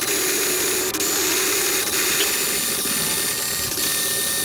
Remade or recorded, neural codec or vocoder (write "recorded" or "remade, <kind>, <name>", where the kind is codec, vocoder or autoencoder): recorded